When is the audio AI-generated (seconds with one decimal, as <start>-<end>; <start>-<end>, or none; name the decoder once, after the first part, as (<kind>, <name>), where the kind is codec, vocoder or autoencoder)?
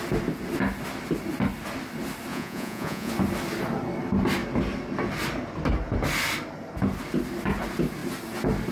2.3-3.1 (vocoder, Vocos)